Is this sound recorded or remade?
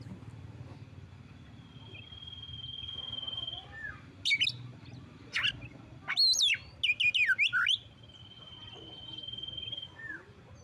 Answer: recorded